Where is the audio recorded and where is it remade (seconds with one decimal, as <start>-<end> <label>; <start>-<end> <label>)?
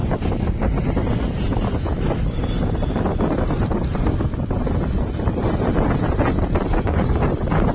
0.0-6.7 recorded; 6.7-7.2 remade; 7.2-7.7 recorded